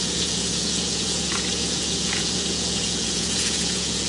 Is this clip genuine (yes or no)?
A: no